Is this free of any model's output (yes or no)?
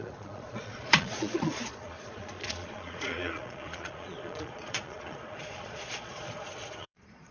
no